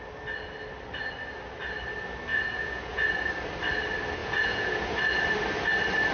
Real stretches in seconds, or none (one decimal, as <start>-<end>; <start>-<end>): 0.0-2.3; 3.3-4.2; 4.8-6.1

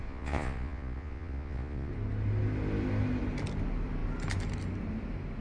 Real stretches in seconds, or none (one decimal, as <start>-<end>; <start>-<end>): 1.9-5.4